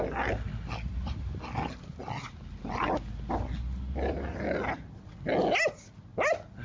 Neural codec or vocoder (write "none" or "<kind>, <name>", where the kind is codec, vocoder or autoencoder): none